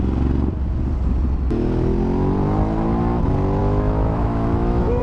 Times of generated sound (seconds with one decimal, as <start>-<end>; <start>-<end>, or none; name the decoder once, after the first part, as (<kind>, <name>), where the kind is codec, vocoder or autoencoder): 3.6-5.0 (autoencoder, DAC-VAE)